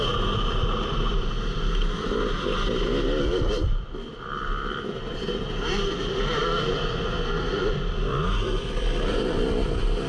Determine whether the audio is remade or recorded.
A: recorded